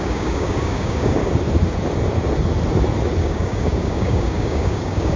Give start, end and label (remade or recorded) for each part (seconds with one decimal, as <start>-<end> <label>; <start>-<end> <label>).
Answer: 0.0-1.2 remade; 1.2-3.2 recorded; 3.2-5.2 remade